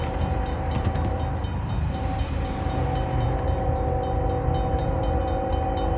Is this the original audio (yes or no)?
no